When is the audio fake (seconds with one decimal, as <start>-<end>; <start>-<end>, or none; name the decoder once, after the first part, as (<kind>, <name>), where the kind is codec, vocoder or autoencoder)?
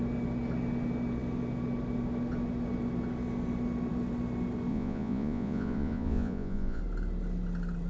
4.7-6.8 (vocoder, Vocos)